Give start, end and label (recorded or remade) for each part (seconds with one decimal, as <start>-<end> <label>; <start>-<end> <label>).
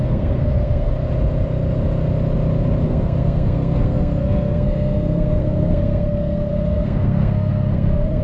0.0-0.9 remade; 0.9-2.8 recorded; 2.8-8.2 remade